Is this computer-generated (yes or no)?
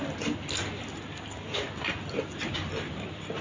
no